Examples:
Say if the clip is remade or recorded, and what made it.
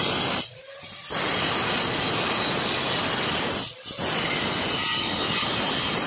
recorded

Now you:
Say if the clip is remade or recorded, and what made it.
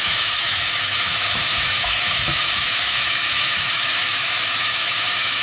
remade, autoencoder, DAC-VAE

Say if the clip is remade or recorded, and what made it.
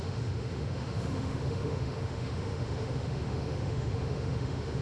remade, autoencoder, DAC-VAE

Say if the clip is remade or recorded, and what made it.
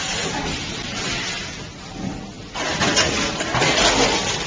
recorded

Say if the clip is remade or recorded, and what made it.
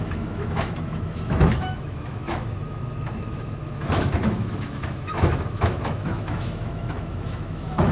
remade, autoencoder, DAC-VAE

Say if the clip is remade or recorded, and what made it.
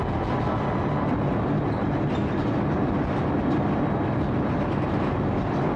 recorded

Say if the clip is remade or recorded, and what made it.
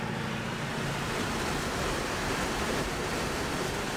recorded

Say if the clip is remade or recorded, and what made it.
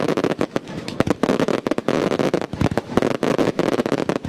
remade, autoencoder, DAC-VAE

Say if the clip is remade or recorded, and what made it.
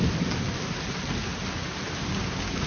recorded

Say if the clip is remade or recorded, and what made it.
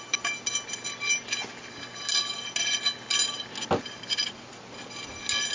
recorded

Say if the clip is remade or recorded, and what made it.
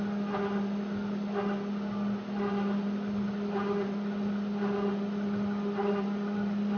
recorded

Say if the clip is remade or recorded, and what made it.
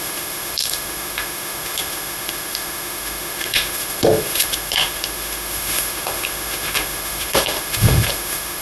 remade, autoencoder, DAC-VAE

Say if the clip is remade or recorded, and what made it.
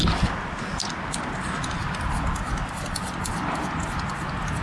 recorded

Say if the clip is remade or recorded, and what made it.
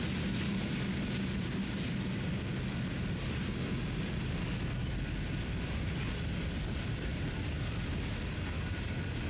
recorded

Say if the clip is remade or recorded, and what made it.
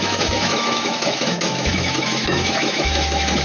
remade, autoencoder, DAC-VAE